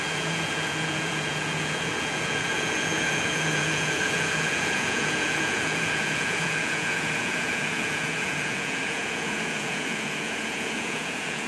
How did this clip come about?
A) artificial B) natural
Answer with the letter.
A